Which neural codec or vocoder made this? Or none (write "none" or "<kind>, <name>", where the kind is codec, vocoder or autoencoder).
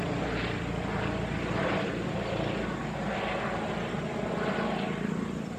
none